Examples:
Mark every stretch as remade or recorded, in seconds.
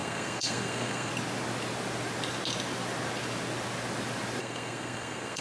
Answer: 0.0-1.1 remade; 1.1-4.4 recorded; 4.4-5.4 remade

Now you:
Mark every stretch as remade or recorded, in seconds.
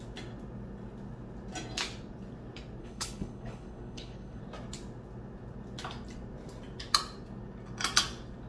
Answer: 0.0-2.8 recorded; 2.8-4.4 remade; 4.4-8.5 recorded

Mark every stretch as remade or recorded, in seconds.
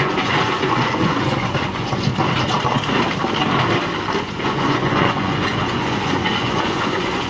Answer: 0.0-2.1 remade; 2.1-4.2 recorded; 4.2-7.3 remade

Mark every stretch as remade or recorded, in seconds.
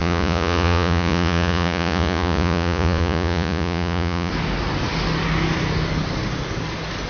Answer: 0.0-4.3 remade; 4.3-7.1 recorded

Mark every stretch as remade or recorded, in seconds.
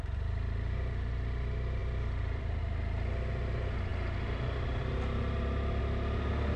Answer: 0.0-1.8 recorded; 1.8-2.6 remade; 2.6-6.6 recorded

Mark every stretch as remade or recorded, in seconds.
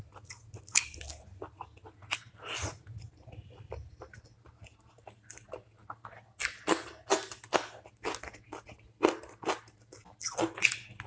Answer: 0.0-11.1 recorded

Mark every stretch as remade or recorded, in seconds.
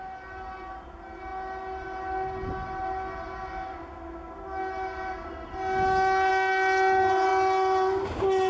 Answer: 0.0-8.5 recorded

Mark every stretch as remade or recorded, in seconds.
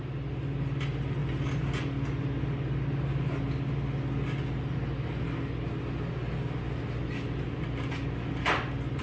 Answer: 0.0-9.0 recorded